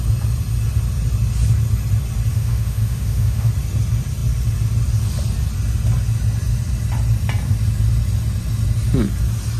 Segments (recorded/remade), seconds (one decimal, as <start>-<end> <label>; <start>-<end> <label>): 0.0-2.3 recorded; 2.3-3.5 remade; 3.5-9.6 recorded